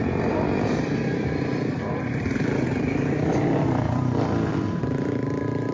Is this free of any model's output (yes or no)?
no